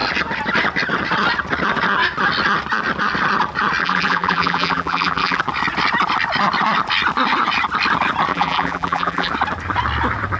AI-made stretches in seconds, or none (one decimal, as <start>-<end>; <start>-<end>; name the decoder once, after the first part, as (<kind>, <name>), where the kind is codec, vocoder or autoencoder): 3.8-5.4 (vocoder, BigVGAN v2); 8.3-9.3